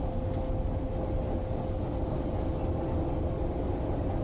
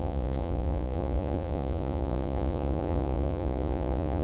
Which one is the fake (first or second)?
second